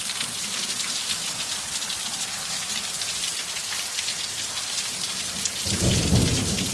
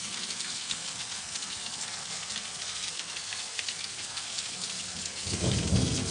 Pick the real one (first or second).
first